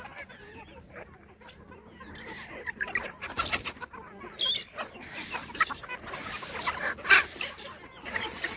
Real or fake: real